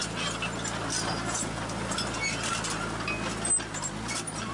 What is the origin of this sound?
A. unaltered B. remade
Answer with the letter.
A